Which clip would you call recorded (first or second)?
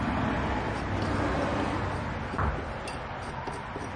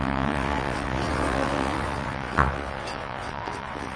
first